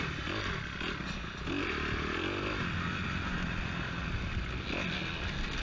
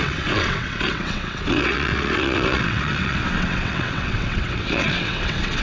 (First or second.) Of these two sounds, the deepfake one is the second